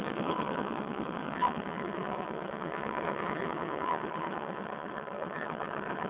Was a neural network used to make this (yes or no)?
yes